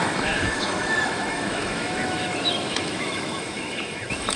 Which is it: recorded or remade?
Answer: remade